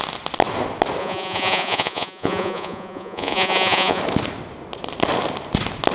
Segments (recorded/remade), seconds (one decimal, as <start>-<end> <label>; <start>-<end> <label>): 0.0-1.0 recorded; 1.0-4.0 remade; 4.0-5.9 recorded